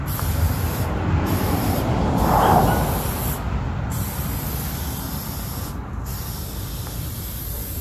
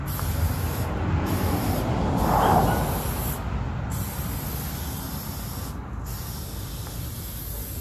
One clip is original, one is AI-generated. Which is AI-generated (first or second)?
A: first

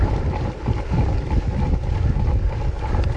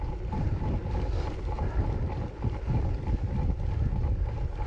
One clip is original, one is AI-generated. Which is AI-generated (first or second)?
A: first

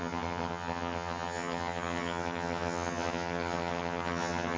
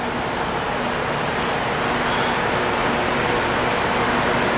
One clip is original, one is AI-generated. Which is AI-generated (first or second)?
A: first